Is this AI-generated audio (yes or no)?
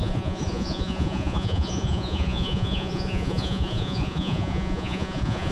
yes